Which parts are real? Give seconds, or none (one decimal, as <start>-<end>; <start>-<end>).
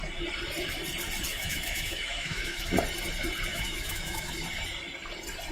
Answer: 0.0-1.3; 2.7-3.5; 4.3-5.5